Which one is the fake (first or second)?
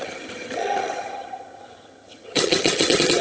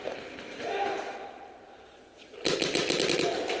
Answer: first